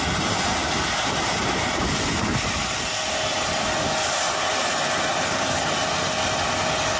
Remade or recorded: recorded